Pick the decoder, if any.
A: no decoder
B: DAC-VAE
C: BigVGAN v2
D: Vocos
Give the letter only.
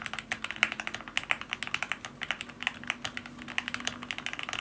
A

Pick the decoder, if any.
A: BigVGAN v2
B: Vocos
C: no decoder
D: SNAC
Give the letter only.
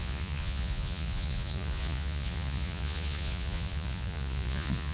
B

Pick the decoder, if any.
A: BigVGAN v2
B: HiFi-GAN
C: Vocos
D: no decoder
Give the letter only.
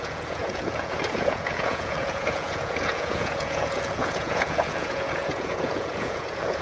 C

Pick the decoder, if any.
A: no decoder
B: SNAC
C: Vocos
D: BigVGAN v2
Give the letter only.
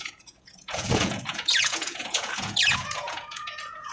C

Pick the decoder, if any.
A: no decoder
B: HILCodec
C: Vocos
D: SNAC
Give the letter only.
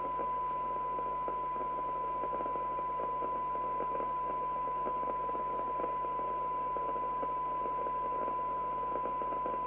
A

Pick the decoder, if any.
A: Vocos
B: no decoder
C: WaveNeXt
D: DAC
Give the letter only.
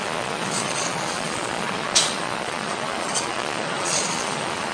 A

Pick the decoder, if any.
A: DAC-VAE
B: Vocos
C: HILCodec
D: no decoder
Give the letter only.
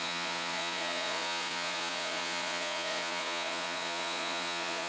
B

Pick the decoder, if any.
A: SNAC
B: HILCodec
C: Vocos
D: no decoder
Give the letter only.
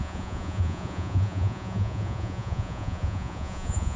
C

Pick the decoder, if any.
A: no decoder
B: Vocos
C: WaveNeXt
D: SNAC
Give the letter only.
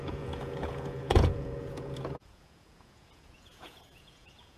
B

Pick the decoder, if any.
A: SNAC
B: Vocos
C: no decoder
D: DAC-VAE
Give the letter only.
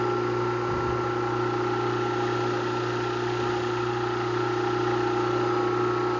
C